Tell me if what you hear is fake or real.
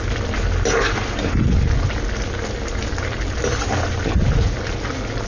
real